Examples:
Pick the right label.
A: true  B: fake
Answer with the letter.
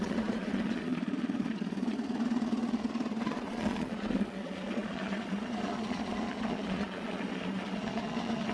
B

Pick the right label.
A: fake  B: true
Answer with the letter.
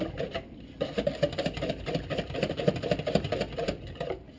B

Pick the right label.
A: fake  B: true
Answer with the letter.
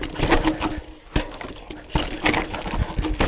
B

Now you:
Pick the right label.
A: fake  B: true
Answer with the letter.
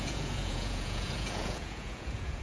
A